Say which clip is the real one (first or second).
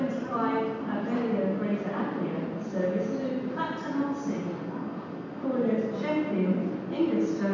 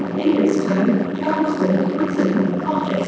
first